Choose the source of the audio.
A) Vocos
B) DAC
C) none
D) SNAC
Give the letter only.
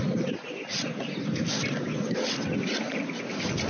C